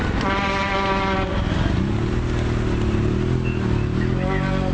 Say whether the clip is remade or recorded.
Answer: recorded